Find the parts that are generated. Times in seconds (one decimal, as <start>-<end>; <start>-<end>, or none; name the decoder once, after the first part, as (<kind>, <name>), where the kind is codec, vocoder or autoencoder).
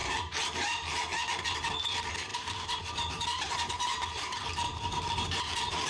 0.0-1.2 (vocoder, BigVGAN v2); 2.3-5.9